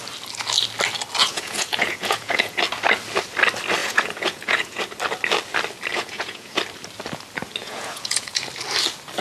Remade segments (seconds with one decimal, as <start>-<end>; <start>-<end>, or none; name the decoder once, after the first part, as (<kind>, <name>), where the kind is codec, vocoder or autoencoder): 1.2-2.6 (vocoder, Vocos); 3.8-4.8; 5.9-6.6; 7.6-8.4

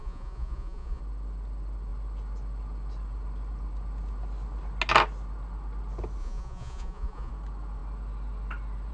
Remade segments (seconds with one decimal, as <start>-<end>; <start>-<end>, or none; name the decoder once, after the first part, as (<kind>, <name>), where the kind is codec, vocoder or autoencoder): 0.0-1.0 (vocoder, Vocos); 6.2-7.3